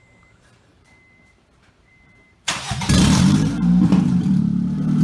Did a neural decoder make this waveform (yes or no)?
yes